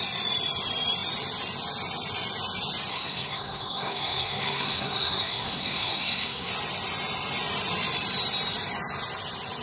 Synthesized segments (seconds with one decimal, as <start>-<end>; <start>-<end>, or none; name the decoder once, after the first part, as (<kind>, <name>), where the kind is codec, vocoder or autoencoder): 2.9-6.5 (codec, SNAC)